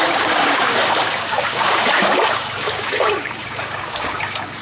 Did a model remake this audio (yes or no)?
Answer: yes